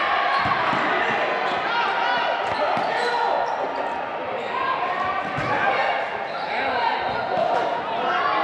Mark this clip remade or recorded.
recorded